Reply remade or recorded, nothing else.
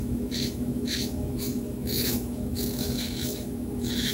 remade